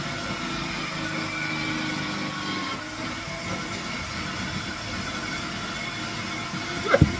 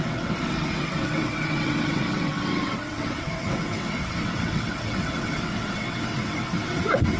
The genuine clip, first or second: first